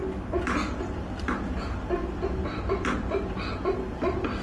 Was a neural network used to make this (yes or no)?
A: no